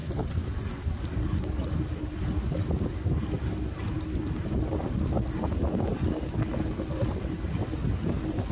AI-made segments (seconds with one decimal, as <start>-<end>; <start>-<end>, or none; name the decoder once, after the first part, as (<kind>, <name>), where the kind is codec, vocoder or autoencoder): none